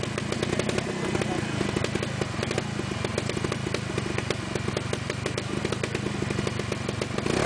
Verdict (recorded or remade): recorded